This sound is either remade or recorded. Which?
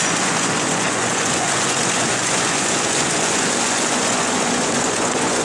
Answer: remade